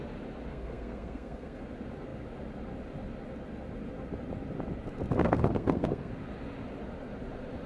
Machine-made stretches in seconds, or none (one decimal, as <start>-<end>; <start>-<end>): 0.5-1.6; 5.2-6.1